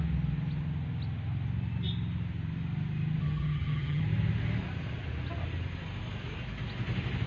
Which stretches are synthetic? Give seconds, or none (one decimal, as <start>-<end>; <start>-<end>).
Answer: 3.2-4.0